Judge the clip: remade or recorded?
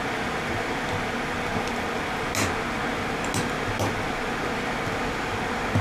recorded